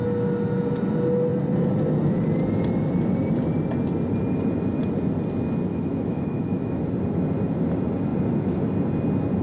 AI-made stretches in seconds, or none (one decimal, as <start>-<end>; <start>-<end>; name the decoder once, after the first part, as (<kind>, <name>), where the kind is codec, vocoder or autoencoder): 5.7-6.8 (autoencoder, DAC-VAE)